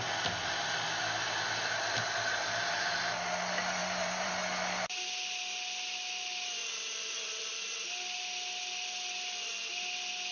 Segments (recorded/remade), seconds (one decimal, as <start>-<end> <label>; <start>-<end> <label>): 0.0-2.5 recorded; 2.5-3.1 remade; 3.1-3.8 recorded; 3.8-4.3 remade; 4.3-10.3 recorded